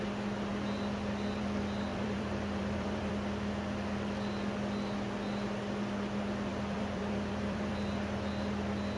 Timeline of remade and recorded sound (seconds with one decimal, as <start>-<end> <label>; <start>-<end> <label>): 0.0-1.9 recorded; 1.9-3.1 remade; 3.1-6.5 recorded; 6.5-7.7 remade; 7.7-9.0 recorded